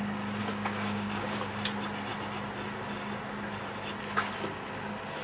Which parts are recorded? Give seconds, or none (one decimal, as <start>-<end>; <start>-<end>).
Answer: 0.0-0.4; 1.5-5.2